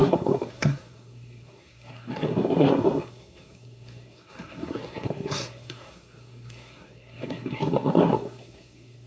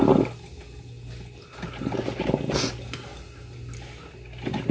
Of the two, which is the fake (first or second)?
first